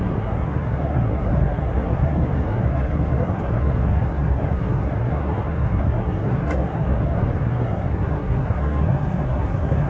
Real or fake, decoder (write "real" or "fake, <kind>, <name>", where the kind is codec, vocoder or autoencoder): fake, codec, SNAC